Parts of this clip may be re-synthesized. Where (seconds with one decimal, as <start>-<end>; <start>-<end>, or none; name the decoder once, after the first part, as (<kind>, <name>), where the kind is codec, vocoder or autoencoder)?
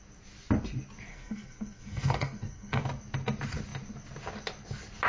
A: 1.1-2.8 (codec, SNAC)